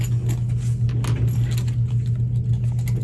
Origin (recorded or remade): recorded